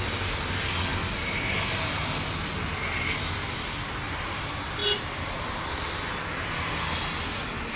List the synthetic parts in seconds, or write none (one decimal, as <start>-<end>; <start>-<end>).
none

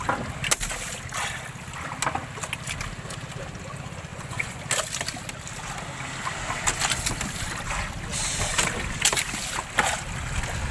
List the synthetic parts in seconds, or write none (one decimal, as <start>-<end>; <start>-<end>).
4.1-4.6

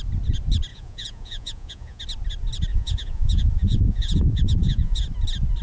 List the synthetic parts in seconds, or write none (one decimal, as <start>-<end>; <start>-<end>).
0.7-2.0; 2.7-5.0